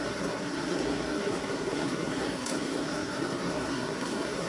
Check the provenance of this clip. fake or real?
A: fake